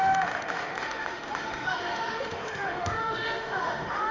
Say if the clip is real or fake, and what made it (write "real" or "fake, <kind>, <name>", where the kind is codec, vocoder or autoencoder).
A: fake, autoencoder, DAC-VAE